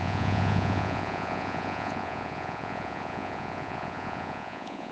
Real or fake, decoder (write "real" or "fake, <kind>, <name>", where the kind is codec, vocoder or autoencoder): fake, vocoder, Vocos